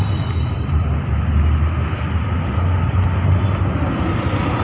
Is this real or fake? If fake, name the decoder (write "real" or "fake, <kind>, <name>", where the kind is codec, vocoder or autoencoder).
real